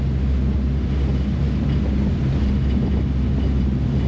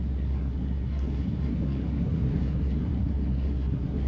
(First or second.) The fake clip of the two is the second